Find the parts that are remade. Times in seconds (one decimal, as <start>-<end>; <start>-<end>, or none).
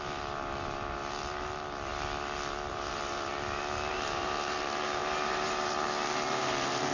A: 0.0-1.9; 2.7-3.3; 3.9-6.9